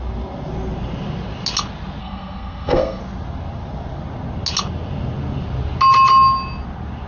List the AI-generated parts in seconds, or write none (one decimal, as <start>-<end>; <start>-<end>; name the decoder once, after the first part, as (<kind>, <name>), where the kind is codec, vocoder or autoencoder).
2.0-3.0 (codec, SNAC)